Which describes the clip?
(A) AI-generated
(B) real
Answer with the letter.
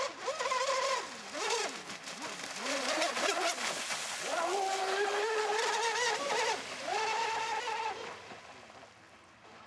B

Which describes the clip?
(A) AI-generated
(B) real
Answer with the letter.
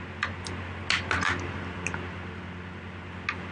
B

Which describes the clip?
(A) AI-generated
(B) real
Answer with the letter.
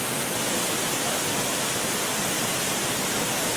B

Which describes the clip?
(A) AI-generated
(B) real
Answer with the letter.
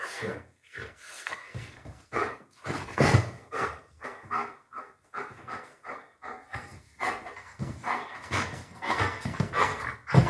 A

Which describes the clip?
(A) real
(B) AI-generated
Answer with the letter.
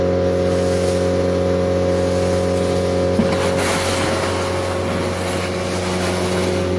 A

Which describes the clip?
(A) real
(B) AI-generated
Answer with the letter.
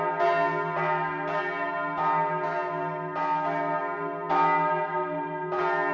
A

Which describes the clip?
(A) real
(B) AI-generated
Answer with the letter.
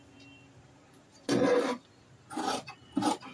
A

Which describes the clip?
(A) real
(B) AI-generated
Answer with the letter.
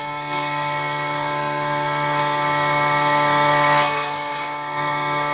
B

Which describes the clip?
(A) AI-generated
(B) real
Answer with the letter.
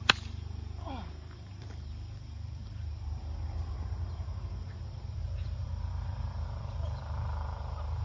A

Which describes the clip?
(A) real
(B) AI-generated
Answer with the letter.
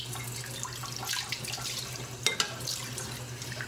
A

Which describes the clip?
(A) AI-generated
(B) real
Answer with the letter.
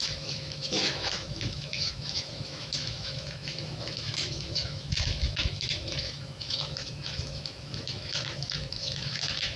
A